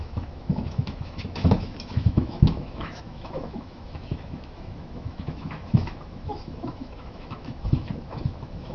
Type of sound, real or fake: fake